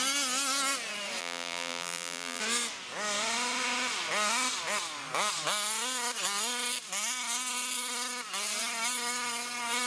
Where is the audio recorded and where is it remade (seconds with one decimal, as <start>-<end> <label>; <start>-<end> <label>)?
0.0-1.2 recorded; 1.2-2.4 remade; 2.4-9.9 recorded

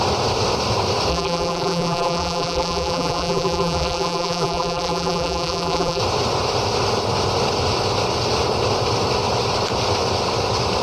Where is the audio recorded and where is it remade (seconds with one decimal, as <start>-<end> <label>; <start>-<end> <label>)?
0.0-1.1 recorded; 1.1-6.0 remade; 6.0-10.8 recorded

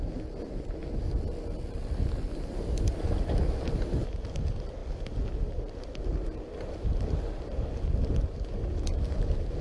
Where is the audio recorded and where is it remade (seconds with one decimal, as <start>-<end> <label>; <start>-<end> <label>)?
0.0-9.6 recorded